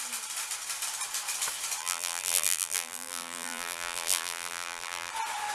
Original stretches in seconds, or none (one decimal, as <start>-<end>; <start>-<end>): 0.0-1.8; 5.1-5.5